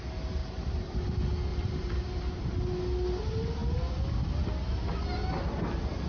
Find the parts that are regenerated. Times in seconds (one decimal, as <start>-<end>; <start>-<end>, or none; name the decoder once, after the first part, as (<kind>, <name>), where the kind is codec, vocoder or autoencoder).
0.4-1.0 (vocoder, BigVGAN v2); 1.5-2.5